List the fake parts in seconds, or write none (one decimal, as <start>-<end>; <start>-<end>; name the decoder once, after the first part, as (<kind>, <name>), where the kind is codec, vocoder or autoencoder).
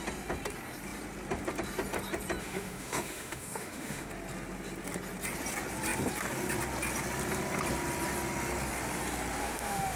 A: 2.4-4.1 (autoencoder, DAC-VAE); 9.4-10.0